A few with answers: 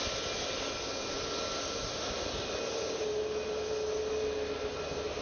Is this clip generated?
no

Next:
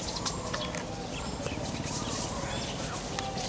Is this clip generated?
no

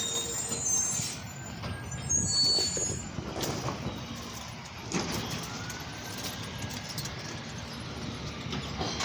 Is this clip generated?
no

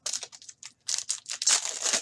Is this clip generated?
no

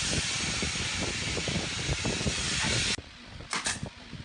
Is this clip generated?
no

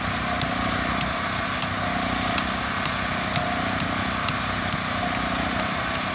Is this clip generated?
no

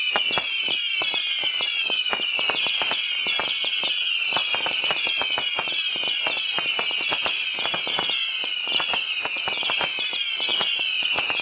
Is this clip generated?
yes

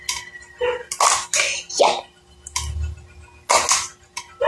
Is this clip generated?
no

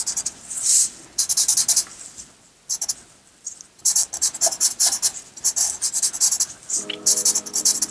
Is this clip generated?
no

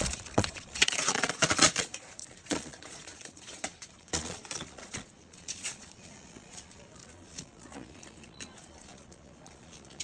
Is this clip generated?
yes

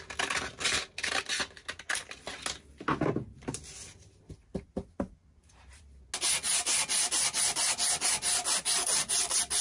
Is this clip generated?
no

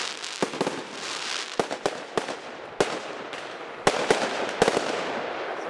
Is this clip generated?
no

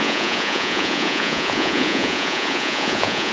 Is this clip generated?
yes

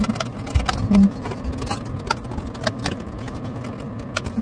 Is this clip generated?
no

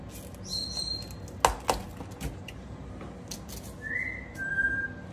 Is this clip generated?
no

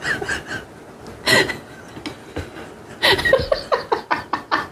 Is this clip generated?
no